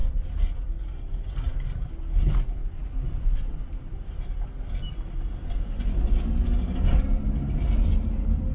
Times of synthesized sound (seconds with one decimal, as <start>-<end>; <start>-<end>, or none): none